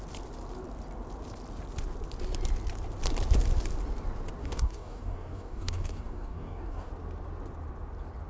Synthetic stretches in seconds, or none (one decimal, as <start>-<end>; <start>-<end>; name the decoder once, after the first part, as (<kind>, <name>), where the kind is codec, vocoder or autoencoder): 4.4-6.9 (codec, DAC)